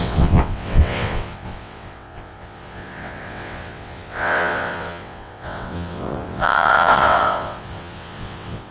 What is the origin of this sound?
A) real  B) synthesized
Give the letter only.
B